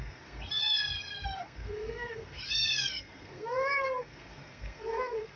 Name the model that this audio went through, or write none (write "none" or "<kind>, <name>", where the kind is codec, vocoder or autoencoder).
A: codec, SNAC